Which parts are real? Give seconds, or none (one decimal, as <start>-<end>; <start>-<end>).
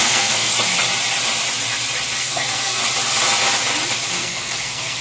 0.5-2.2; 2.8-4.1